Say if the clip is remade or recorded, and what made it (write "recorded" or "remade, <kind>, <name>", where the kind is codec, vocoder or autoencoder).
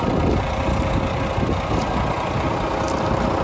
recorded